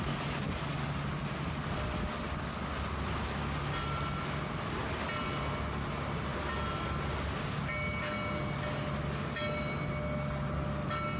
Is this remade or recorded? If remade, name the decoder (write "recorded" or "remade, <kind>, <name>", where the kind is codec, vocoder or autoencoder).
recorded